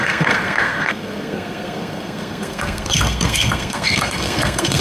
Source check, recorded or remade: remade